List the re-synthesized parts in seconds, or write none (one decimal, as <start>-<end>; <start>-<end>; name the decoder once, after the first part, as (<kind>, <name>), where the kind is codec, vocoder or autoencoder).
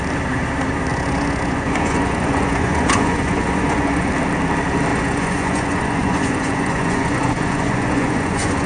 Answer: 0.9-4.1 (vocoder, Vocos); 4.9-8.7